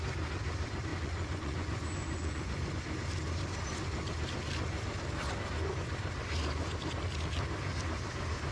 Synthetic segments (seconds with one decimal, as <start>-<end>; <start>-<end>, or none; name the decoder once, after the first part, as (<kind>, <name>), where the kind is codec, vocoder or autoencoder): 0.9-2.8 (vocoder, Vocos)

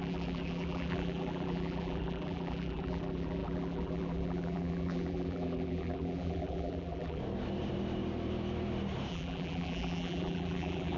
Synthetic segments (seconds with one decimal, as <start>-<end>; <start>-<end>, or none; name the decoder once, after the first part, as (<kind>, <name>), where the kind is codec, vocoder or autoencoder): 0.0-7.2 (vocoder, BigVGAN v2); 9.1-11.0

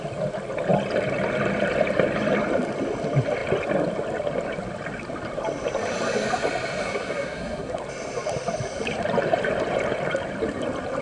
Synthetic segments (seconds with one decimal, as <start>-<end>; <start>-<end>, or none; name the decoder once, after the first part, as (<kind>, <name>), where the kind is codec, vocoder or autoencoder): 6.8-7.7 (codec, SNAC)

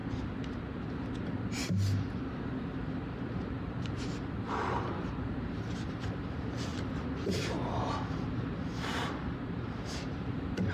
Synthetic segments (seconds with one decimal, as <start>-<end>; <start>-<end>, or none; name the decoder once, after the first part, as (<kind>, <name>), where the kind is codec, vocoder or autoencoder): 3.3-10.7 (vocoder, BigVGAN v2)